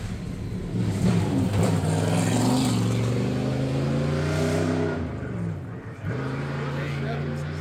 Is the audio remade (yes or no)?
no